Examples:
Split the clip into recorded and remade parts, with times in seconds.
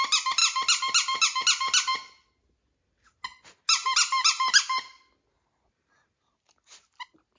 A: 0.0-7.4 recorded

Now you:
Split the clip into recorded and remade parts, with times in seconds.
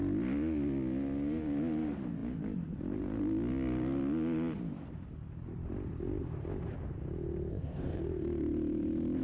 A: 0.0-7.5 recorded; 7.5-8.0 remade; 8.0-9.2 recorded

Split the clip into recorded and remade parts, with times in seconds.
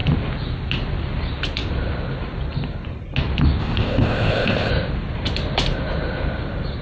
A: 0.0-3.6 recorded; 3.6-4.7 remade; 4.7-6.8 recorded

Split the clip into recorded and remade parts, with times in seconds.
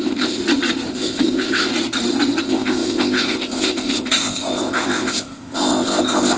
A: 0.0-0.4 remade; 0.4-0.9 recorded; 0.9-1.7 remade; 1.7-2.4 recorded; 2.4-6.4 remade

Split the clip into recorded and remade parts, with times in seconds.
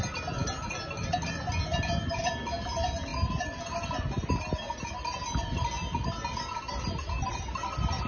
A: 0.0-8.1 recorded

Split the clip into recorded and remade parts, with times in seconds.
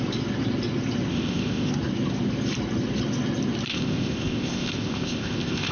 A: 0.0-1.1 recorded; 1.1-1.7 remade; 1.7-3.7 recorded; 3.7-5.7 remade